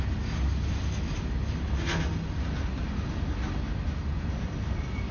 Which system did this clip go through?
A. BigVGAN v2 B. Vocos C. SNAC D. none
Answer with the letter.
D